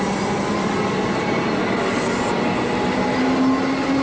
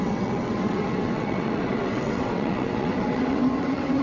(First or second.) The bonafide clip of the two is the first